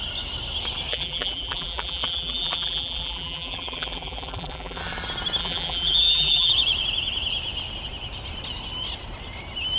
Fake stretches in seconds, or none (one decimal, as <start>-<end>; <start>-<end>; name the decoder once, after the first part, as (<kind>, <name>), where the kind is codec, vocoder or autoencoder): 0.9-4.8 (vocoder, BigVGAN v2); 5.4-6.5